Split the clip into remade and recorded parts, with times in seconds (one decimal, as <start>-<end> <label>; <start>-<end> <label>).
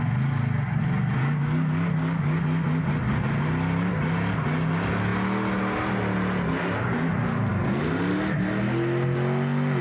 0.0-1.2 recorded; 1.2-2.4 remade; 2.4-9.8 recorded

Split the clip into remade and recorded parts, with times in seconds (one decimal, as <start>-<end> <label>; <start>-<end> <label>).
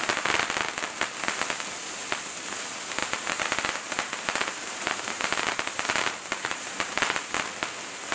0.0-3.0 recorded; 3.0-7.3 remade; 7.3-8.1 recorded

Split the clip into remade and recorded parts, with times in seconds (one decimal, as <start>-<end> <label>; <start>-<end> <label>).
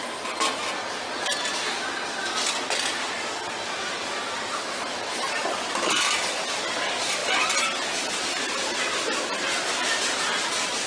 0.0-10.9 recorded